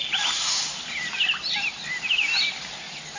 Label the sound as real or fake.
real